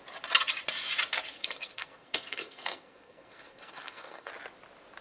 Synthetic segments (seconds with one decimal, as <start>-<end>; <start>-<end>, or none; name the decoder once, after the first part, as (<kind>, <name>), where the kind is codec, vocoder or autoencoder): 1.3-4.3 (codec, SNAC)